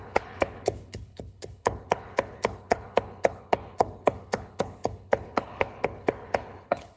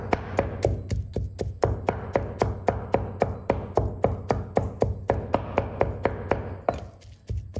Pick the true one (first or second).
second